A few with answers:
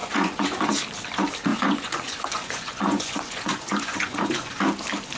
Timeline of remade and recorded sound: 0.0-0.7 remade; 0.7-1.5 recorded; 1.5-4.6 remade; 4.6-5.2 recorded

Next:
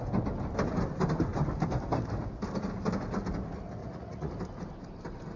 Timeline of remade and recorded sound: 0.0-3.8 recorded; 3.8-4.3 remade; 4.3-5.4 recorded

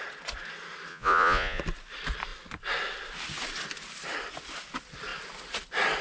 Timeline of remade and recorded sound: 0.0-0.9 recorded; 0.9-1.6 remade; 1.6-6.0 recorded

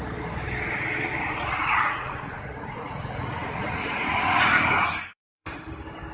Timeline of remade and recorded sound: 0.0-1.1 recorded; 1.1-4.4 remade; 4.4-5.1 recorded; 5.1-5.6 remade; 5.6-6.1 recorded

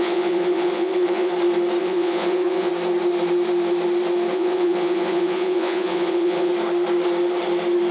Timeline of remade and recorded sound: 0.0-1.3 remade; 1.3-1.8 recorded; 1.8-2.7 remade; 2.7-4.3 recorded; 4.3-6.5 remade; 6.5-7.9 recorded